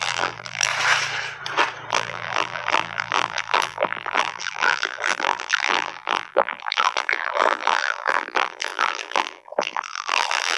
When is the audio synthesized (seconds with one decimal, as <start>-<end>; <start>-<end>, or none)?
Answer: 0.0-0.7; 1.9-10.6